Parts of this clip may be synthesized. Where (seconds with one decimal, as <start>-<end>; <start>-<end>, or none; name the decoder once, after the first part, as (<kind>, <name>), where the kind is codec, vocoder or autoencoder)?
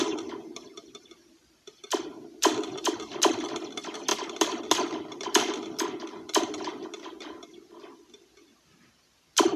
none